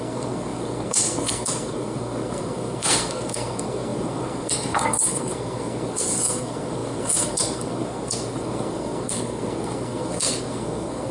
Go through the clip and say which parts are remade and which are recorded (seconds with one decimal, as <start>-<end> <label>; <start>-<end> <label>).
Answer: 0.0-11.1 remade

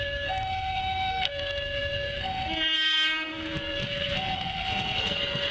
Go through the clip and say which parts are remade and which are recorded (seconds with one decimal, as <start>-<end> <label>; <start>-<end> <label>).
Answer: 0.0-5.5 remade

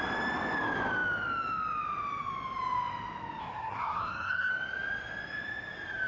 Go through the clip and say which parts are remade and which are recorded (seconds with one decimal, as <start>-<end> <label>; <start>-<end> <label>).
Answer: 0.0-3.4 recorded; 3.4-4.5 remade; 4.5-6.1 recorded